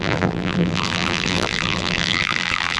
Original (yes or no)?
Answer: no